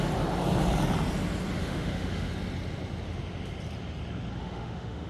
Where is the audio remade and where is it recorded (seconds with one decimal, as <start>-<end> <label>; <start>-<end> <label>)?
0.0-1.6 recorded; 1.6-2.3 remade; 2.3-4.4 recorded; 4.4-5.1 remade